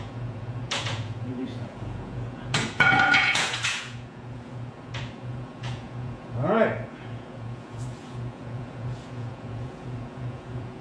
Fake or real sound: fake